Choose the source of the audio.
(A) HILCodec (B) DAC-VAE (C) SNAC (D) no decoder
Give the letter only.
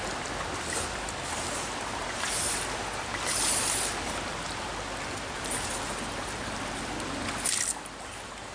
D